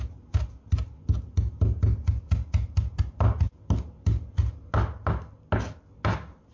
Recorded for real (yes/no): yes